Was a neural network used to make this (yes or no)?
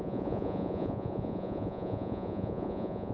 yes